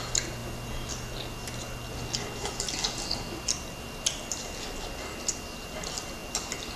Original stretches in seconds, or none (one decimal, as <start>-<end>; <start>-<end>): 0.0-6.8